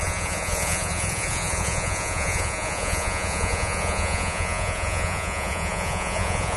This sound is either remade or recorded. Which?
remade